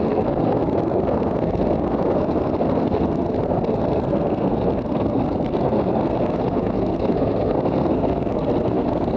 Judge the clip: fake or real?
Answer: fake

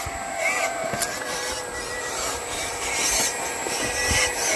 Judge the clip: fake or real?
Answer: real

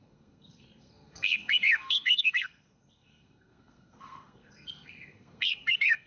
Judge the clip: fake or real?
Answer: fake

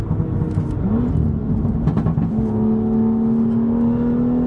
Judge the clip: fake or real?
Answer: real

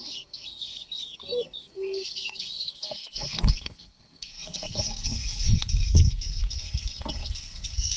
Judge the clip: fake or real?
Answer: fake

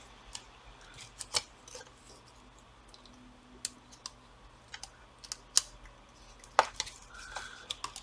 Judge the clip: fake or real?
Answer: real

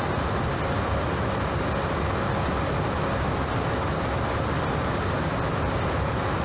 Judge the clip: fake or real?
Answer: real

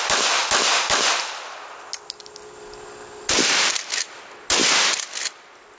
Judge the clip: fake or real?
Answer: real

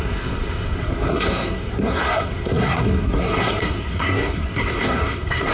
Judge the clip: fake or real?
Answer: fake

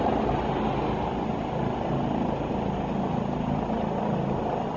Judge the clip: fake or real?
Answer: real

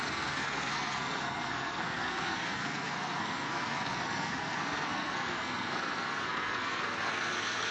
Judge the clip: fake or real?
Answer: fake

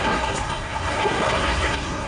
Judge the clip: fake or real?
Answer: fake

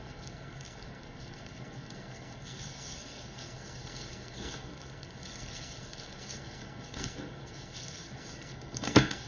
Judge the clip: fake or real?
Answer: fake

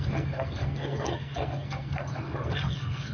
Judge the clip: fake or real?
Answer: fake